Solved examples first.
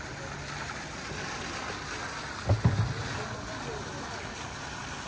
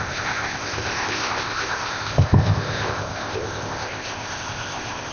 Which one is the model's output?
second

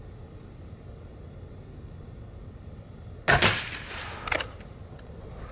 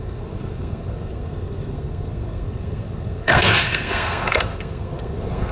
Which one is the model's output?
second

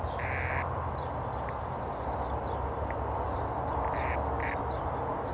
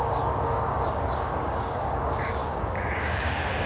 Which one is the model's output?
second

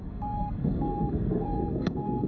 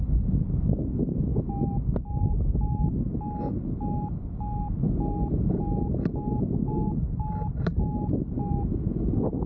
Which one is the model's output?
first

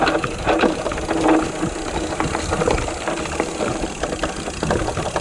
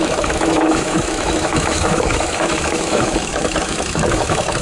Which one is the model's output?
second